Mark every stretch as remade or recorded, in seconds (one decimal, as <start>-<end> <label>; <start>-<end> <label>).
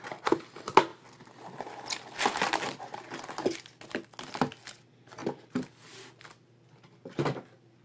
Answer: 0.0-5.2 recorded; 5.2-6.1 remade; 6.1-7.8 recorded